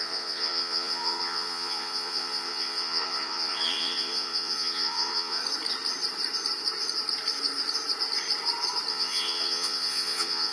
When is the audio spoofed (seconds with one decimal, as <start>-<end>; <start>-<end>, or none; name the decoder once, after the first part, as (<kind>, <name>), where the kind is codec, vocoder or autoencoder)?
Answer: 0.0-5.4 (vocoder, Vocos); 8.9-10.5